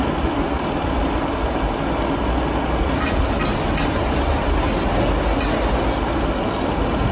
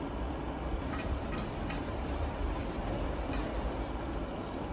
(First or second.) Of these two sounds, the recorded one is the first